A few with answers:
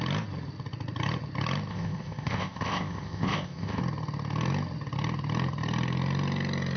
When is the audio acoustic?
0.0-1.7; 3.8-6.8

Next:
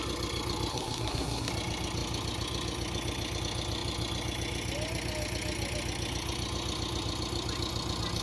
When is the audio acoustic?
0.0-0.7; 1.5-8.2

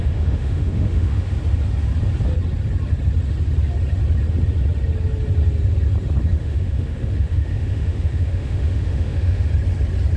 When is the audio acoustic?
1.3-6.4; 9.5-10.2

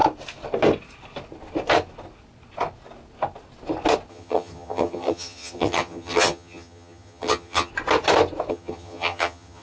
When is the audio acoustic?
0.0-4.1; 7.7-8.5

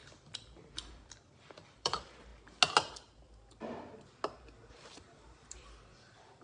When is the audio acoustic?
2.3-4.7

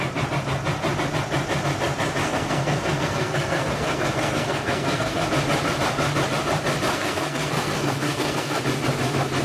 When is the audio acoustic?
0.0-2.2; 5.3-6.9; 8.6-9.4

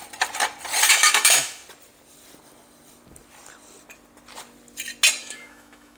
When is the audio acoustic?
0.0-0.9; 1.6-5.2

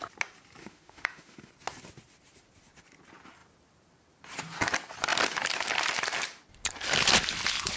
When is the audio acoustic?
0.0-0.6; 1.5-7.8